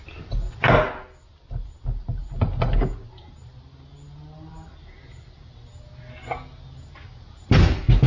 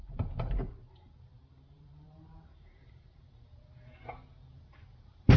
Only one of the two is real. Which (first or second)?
first